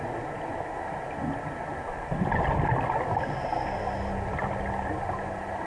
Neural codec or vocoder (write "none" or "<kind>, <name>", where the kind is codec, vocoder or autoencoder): none